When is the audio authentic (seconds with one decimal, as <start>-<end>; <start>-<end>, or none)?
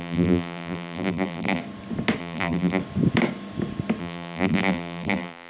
1.6-2.2; 2.8-4.0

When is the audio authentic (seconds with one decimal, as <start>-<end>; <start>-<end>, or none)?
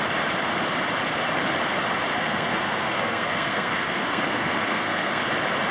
0.0-2.1; 5.2-5.7